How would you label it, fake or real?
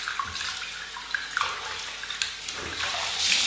real